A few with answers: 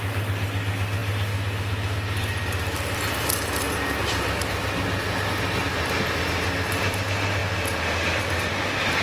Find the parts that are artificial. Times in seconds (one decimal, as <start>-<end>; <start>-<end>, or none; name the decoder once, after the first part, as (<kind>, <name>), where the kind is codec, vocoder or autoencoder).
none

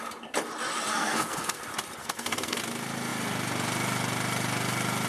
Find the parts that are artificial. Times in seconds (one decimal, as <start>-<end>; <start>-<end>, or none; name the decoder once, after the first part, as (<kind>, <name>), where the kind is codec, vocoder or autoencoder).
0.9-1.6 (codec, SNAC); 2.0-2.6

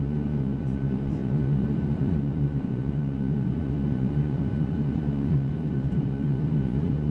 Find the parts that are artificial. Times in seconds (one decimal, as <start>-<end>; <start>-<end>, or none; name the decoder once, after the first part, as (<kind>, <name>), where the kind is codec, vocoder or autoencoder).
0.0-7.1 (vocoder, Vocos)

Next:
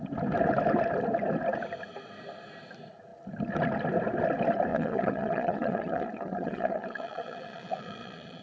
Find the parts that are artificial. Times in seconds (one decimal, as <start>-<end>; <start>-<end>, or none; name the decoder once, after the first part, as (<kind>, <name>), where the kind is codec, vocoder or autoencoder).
4.7-8.4 (vocoder, Vocos)